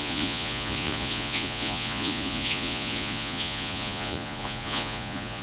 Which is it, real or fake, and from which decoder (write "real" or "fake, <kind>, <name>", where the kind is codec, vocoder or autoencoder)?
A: fake, vocoder, Vocos